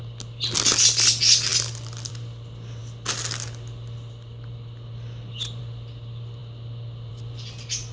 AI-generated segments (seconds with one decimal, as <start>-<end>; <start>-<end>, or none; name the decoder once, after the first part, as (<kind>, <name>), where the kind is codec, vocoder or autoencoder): none